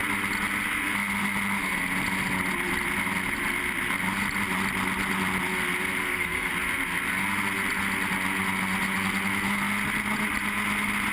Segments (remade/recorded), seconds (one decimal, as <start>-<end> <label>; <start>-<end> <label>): 0.0-6.0 recorded; 6.0-6.5 remade; 6.5-11.1 recorded